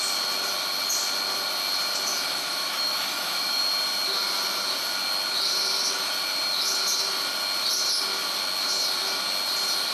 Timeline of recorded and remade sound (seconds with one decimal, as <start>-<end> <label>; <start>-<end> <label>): 0.0-2.1 recorded; 2.1-3.6 remade; 3.6-9.9 recorded